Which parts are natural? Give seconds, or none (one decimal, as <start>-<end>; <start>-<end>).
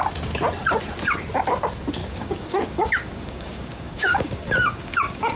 0.0-2.0